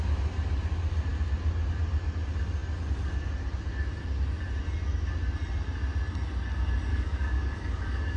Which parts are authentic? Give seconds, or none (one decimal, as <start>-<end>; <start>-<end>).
0.0-6.9